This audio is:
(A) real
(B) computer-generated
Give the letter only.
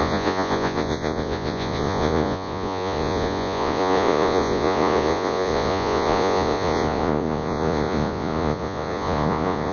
B